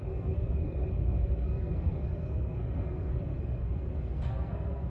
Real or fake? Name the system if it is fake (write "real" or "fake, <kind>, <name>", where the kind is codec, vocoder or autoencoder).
fake, codec, SNAC